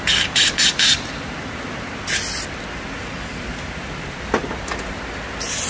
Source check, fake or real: real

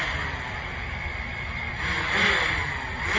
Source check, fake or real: real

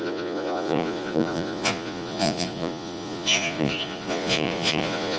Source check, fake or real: fake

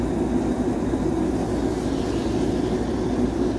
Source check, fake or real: real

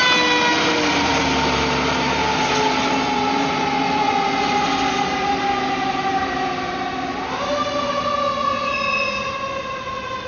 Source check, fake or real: real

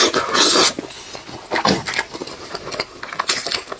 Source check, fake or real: real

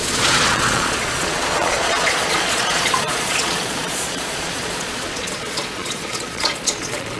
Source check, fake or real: fake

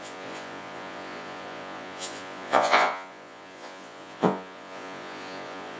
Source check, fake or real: fake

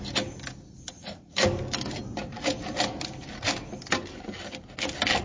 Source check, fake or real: real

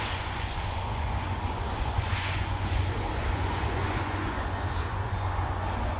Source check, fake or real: fake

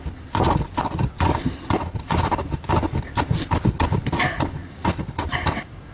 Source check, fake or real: real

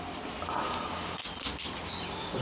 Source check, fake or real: real